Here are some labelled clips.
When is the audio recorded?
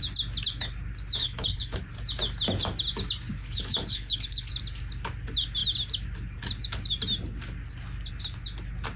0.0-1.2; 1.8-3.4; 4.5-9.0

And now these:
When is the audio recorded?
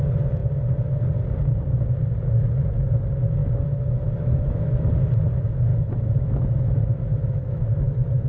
0.0-3.4; 4.8-5.7; 7.9-8.3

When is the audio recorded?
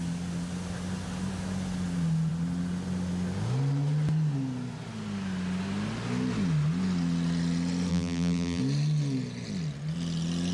0.0-7.9; 8.6-10.5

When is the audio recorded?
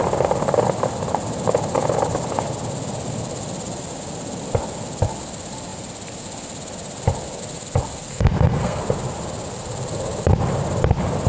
0.0-8.1; 8.8-11.3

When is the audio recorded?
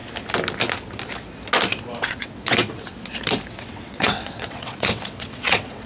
0.0-2.0; 2.9-3.6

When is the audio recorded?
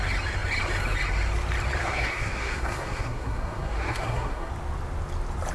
0.0-1.8; 4.5-5.5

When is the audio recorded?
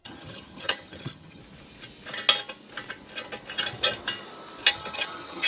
1.4-4.7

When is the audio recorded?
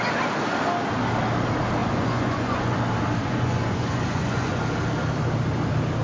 0.0-1.8; 2.8-3.2; 4.6-6.0